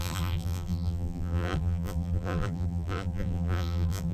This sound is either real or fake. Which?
fake